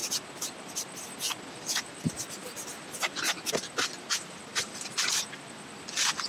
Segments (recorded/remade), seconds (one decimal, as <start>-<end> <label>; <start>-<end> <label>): 0.0-4.5 recorded; 4.5-5.1 remade; 5.1-6.3 recorded